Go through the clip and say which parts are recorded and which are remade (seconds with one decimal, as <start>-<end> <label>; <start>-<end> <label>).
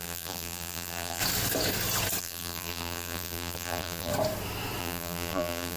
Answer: 0.0-1.2 remade; 1.2-2.2 recorded; 2.2-4.1 remade; 4.1-4.8 recorded; 4.8-5.8 remade